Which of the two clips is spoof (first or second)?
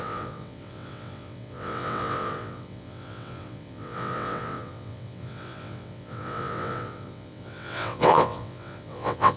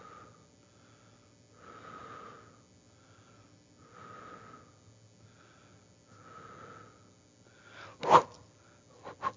first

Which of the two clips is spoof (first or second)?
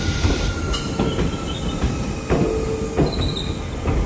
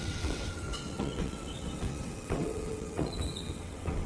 second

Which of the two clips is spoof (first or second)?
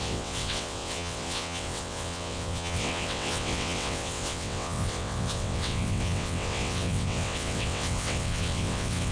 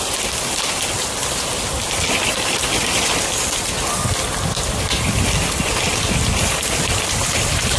first